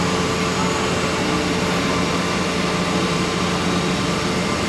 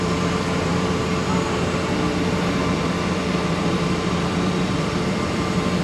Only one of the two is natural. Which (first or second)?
first